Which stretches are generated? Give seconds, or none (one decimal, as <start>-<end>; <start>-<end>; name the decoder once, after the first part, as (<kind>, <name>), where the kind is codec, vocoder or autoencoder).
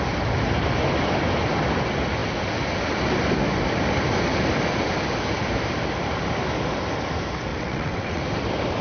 7.5-8.2 (vocoder, WaveNeXt)